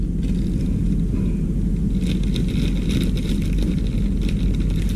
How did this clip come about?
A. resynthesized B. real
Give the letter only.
B